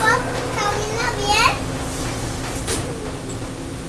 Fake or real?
real